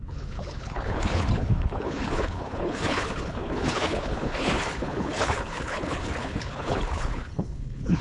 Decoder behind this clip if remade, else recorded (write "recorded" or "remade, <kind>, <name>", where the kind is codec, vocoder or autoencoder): remade, codec, HILCodec